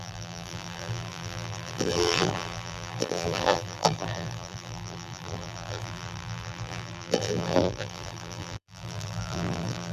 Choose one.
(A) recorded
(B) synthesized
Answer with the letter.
B